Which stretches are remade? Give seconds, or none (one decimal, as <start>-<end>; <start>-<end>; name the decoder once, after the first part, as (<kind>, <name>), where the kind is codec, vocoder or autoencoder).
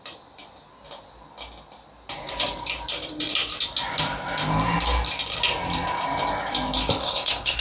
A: 7.0-7.6 (codec, SNAC)